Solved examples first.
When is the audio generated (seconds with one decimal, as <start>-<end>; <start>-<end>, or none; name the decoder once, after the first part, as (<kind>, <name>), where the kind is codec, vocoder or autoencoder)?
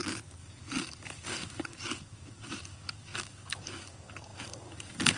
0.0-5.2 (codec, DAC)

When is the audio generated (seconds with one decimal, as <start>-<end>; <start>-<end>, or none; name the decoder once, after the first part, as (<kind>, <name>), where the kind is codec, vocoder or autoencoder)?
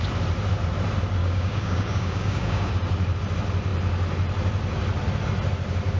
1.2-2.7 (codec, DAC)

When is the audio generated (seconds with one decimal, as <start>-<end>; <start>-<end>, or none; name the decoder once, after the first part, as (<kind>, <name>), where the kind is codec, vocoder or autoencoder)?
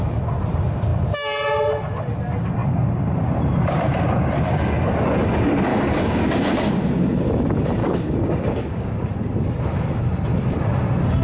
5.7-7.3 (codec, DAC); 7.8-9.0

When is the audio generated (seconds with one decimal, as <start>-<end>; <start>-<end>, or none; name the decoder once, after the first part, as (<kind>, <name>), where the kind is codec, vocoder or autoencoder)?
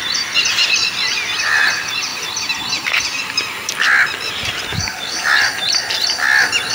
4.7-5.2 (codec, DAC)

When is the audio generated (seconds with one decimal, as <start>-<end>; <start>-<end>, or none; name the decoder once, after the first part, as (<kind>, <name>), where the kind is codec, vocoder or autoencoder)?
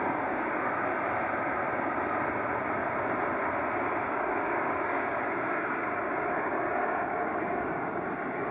0.0-0.9 (codec, DAC); 4.0-8.5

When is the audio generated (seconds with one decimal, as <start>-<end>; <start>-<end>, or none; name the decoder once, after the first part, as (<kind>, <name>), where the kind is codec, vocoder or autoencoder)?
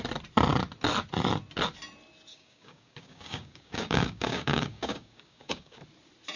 2.3-5.8 (codec, DAC)